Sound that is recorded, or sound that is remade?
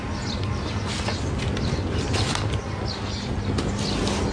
recorded